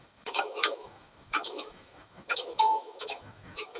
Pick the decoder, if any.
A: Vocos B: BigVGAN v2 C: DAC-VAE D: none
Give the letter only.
C